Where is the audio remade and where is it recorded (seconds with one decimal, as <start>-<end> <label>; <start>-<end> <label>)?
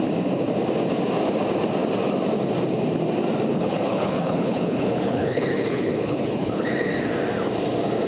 0.0-3.5 recorded; 3.5-6.9 remade; 6.9-8.1 recorded